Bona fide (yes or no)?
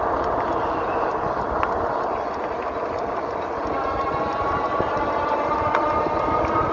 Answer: yes